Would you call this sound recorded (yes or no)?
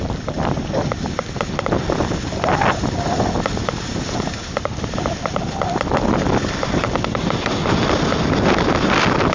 yes